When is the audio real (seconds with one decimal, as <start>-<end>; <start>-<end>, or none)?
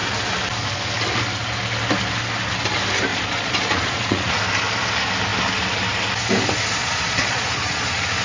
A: 0.0-3.1; 4.4-6.8